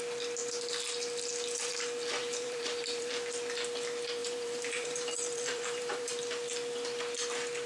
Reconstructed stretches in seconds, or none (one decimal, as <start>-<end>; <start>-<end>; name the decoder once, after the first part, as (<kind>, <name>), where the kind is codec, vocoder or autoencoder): 2.2-3.1 (vocoder, BigVGAN v2); 4.2-6.1